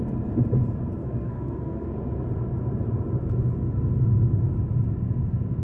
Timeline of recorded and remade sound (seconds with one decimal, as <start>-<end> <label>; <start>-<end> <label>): 0.0-1.0 recorded; 1.0-1.9 remade; 1.9-5.6 recorded